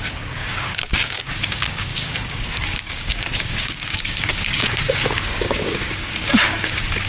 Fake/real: fake